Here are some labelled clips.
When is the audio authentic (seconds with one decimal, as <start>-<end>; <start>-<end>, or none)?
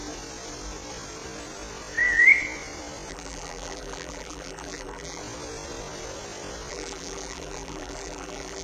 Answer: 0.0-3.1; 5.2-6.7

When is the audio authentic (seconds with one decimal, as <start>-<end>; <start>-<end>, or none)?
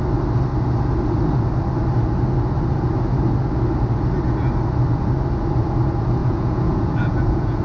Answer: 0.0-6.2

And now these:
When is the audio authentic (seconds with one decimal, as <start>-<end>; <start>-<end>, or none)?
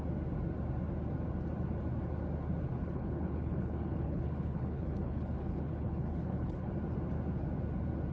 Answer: 0.0-2.7; 6.7-8.1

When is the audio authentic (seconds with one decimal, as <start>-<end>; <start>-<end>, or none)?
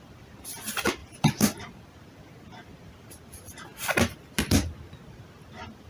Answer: 0.0-5.9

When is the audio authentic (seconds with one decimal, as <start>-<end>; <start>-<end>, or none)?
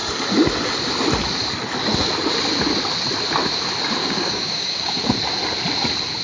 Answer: 0.0-4.0; 5.0-6.2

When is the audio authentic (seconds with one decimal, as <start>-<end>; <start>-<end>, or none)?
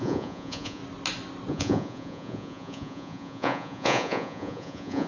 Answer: 0.8-1.5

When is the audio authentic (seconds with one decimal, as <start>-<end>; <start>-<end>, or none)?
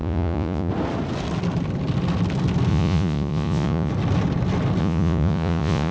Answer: 0.7-2.7; 3.9-4.8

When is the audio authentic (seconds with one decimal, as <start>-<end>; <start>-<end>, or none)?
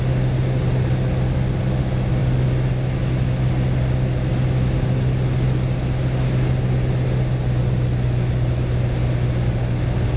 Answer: 0.0-10.2